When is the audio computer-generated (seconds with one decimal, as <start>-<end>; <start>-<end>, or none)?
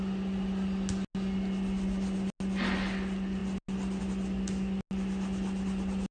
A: none